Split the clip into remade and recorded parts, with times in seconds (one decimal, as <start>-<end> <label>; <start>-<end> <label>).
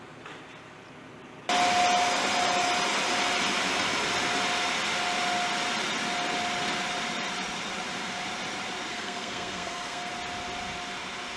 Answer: 0.0-8.9 recorded; 8.9-10.1 remade; 10.1-11.4 recorded